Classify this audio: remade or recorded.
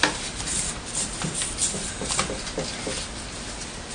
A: recorded